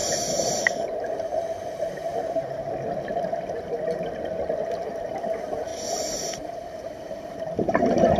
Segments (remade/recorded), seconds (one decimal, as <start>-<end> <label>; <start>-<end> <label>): 0.0-2.1 remade; 2.1-4.7 recorded; 4.7-8.2 remade